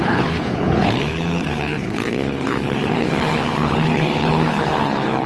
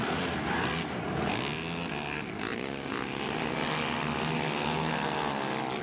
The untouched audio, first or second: second